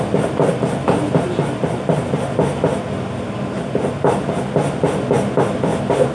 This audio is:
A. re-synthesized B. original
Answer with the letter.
B